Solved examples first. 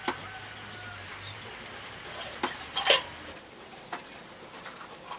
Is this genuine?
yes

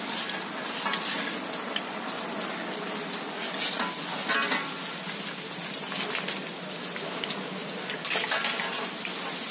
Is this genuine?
yes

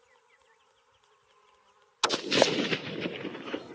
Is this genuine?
yes